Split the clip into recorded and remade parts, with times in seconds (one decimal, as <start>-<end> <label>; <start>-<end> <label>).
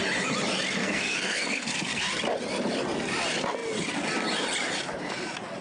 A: 0.0-0.8 recorded; 0.8-2.0 remade; 2.0-5.6 recorded